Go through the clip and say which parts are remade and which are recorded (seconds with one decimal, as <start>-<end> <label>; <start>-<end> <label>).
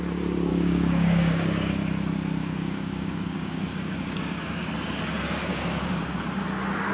0.0-0.5 recorded; 0.5-1.7 remade; 1.7-2.4 recorded; 2.4-4.7 remade; 4.7-5.5 recorded; 5.5-6.2 remade; 6.2-6.9 recorded